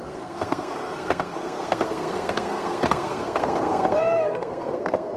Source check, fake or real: fake